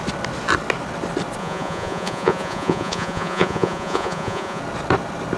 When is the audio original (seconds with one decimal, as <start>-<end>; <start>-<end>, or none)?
0.0-1.4; 4.6-5.4